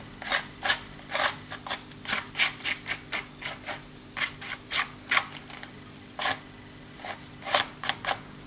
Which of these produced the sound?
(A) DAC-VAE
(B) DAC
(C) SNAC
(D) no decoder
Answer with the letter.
D